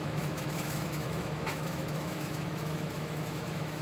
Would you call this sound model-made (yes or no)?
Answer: yes